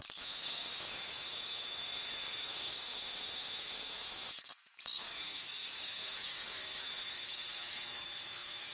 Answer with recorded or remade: remade